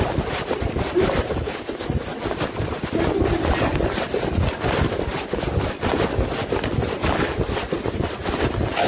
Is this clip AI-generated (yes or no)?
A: no